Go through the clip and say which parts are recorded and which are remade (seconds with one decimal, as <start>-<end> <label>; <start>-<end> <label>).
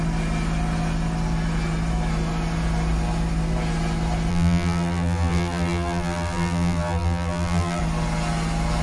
0.0-4.3 recorded; 4.3-7.8 remade; 7.8-8.8 recorded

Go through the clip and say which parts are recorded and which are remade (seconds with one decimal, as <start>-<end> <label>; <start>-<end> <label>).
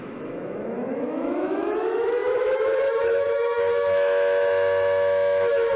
0.0-5.8 remade